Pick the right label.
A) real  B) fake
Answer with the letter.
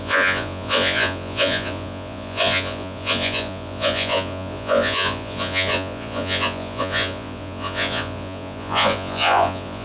B